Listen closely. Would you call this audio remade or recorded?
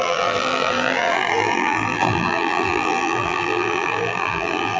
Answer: remade